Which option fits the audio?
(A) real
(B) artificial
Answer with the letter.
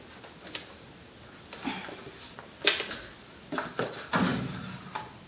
A